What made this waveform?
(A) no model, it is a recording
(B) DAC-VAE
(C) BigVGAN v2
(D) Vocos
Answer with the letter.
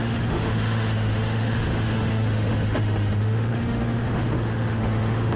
B